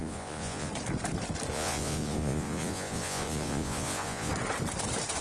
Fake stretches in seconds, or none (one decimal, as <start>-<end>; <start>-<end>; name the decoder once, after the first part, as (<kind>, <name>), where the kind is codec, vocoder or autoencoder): 0.0-0.7 (vocoder, Vocos); 1.5-4.3